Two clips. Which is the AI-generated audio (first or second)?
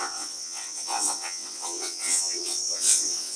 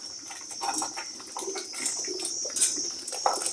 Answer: first